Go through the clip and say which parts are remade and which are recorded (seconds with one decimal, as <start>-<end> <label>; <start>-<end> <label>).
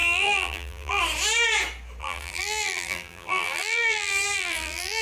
0.0-1.0 remade; 1.0-2.0 recorded; 2.0-5.0 remade